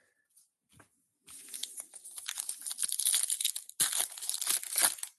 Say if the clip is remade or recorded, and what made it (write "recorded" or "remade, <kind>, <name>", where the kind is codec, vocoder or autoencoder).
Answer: recorded